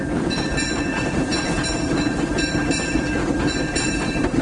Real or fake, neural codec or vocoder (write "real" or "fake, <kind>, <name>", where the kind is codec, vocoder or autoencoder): fake, vocoder, BigVGAN v2